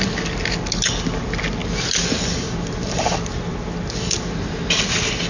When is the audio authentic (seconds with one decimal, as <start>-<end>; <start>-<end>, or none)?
0.0-5.3